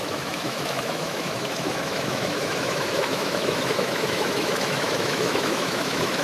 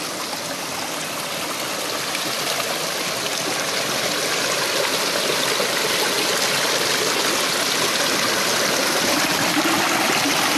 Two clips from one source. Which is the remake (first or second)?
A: first